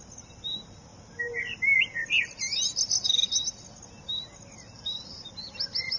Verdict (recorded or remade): recorded